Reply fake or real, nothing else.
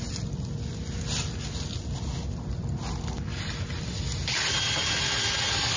real